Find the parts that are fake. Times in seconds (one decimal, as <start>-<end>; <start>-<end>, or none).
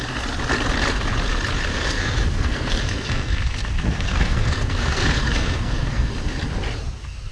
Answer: 1.7-6.1